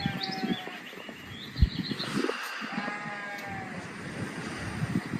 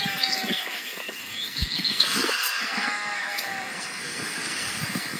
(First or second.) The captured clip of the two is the first